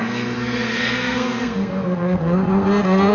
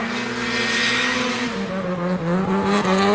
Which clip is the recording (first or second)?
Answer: second